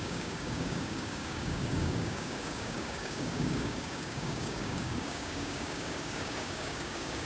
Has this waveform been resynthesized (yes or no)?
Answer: yes